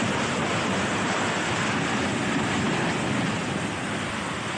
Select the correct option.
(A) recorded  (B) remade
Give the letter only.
A